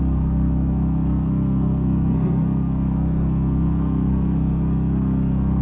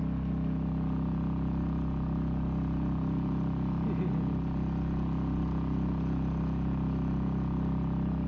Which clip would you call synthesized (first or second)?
first